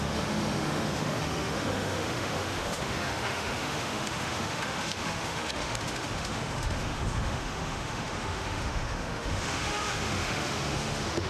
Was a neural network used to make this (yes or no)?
yes